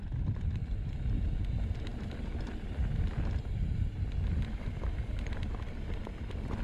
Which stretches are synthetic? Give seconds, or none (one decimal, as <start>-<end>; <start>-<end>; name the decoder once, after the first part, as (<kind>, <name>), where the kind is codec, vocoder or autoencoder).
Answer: none